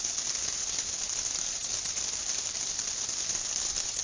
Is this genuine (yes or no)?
no